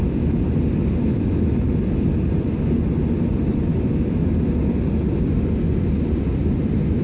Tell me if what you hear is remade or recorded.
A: recorded